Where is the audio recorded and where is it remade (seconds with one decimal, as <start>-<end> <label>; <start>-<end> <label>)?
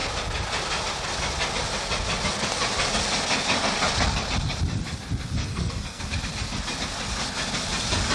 0.0-5.4 recorded; 5.4-6.0 remade; 6.0-8.1 recorded